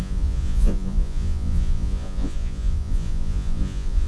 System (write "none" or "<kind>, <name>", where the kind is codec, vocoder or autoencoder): vocoder, Vocos